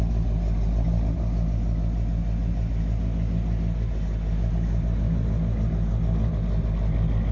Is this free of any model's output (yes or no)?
yes